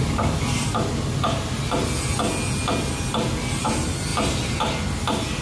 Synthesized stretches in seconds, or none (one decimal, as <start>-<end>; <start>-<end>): none